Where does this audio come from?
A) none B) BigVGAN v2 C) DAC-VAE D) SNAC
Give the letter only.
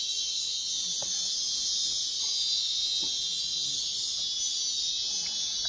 A